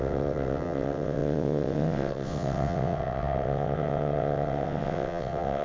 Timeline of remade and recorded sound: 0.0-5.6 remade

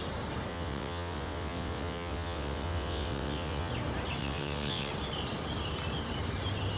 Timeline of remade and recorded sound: 0.0-0.5 recorded; 0.5-3.7 remade; 3.7-4.2 recorded; 4.2-4.9 remade; 4.9-6.8 recorded